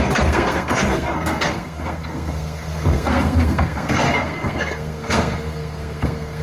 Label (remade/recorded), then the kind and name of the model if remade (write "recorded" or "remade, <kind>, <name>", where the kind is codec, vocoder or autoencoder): remade, codec, SNAC